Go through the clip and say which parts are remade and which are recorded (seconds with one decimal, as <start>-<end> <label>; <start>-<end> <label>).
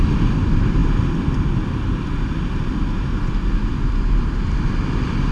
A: 0.0-5.3 recorded